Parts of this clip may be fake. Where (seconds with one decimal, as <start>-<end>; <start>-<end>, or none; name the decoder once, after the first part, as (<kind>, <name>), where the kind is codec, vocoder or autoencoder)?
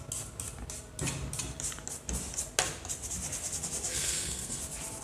3.9-4.6 (codec, SNAC)